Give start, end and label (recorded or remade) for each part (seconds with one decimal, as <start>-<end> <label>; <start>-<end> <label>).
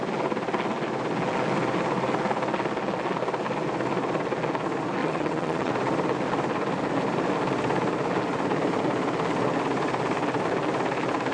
0.0-5.0 recorded; 5.0-5.7 remade; 5.7-11.3 recorded